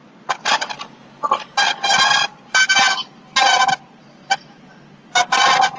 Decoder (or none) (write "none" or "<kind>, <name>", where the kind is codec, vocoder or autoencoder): none